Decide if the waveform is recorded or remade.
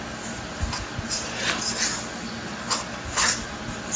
recorded